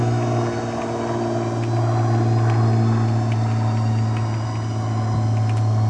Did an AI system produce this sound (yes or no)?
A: no